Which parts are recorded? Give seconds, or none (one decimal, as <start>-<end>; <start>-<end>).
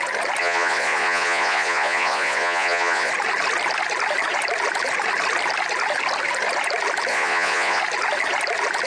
0.0-0.4; 3.1-7.1; 7.8-8.9